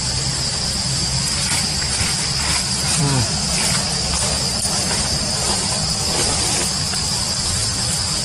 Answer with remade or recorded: recorded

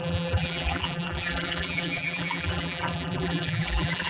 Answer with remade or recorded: remade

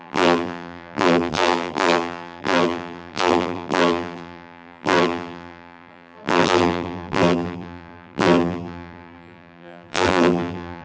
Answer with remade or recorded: remade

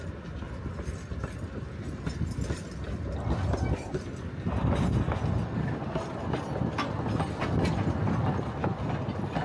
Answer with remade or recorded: recorded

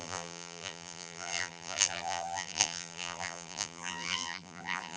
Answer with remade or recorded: remade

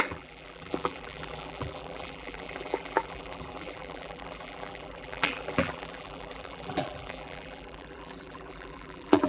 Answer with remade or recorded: remade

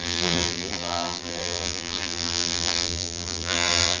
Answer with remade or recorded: remade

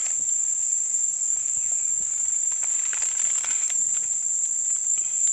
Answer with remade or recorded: remade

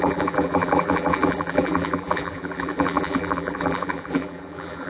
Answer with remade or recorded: remade